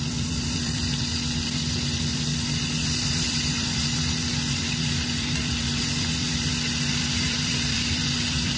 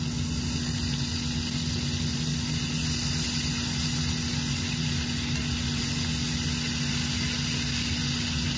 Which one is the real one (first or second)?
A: second